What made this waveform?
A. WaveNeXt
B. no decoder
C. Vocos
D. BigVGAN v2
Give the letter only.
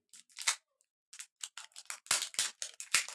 B